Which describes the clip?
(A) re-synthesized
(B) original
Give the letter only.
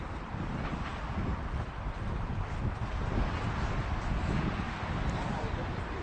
B